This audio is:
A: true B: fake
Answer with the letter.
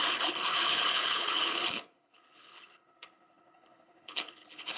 B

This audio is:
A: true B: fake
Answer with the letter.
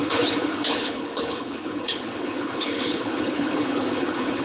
B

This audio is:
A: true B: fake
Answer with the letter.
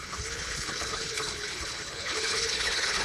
B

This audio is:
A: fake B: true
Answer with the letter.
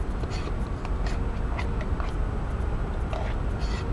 B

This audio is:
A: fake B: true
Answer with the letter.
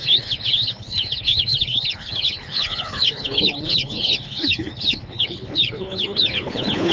A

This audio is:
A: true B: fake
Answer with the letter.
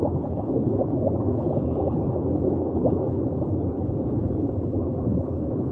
B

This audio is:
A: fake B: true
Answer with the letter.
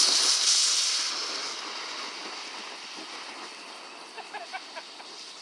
B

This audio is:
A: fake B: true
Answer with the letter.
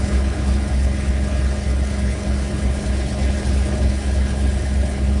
A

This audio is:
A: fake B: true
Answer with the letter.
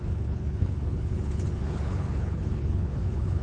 A